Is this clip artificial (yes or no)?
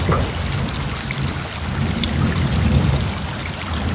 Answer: no